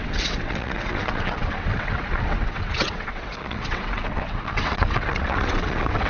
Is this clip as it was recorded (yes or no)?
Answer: no